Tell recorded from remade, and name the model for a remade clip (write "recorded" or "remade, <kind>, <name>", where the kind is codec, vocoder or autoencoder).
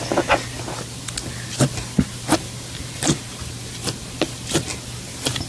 recorded